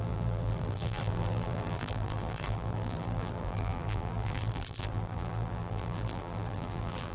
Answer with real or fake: fake